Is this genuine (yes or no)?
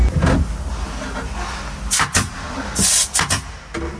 yes